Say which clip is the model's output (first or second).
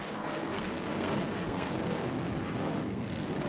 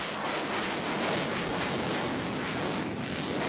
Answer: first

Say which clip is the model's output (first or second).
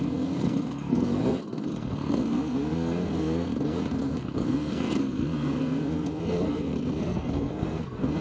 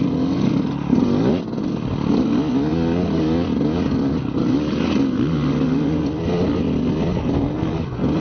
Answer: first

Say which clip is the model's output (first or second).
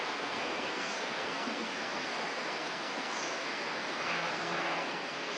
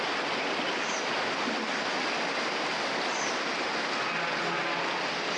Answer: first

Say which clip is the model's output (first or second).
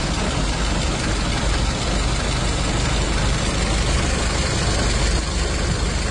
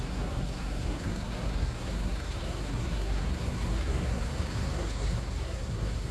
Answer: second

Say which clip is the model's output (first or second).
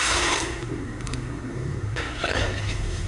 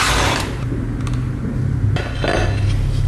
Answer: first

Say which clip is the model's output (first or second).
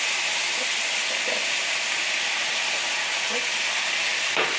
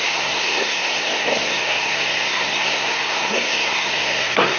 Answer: second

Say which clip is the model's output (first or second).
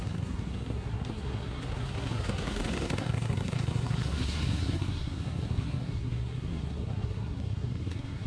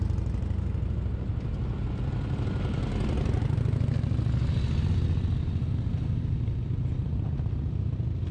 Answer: first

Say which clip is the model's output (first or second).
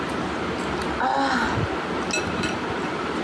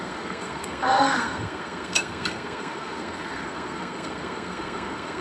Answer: second